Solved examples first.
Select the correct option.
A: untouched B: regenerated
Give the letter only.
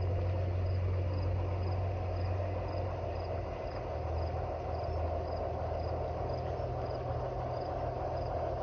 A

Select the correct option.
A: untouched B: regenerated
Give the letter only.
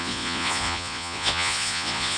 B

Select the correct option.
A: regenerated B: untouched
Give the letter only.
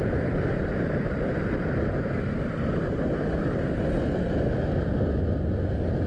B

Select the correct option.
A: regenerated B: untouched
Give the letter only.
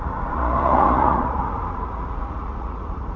A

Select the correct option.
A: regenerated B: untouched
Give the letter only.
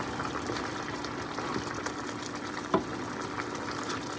B